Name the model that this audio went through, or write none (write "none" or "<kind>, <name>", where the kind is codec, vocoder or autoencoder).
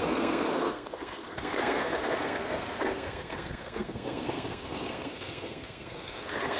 codec, SNAC